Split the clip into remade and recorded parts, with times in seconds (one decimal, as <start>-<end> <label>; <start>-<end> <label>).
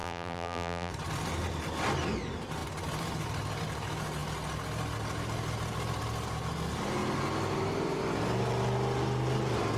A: 0.0-0.9 remade; 0.9-9.8 recorded